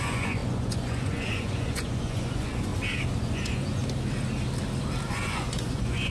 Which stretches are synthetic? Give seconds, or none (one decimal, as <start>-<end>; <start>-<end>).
0.0-2.7; 3.2-3.8; 5.1-6.1